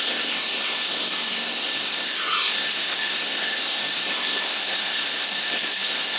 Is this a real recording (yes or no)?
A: no